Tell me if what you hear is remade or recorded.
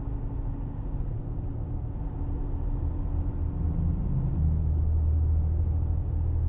recorded